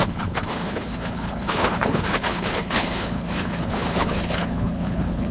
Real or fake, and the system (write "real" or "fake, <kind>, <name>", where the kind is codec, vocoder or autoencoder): fake, codec, HILCodec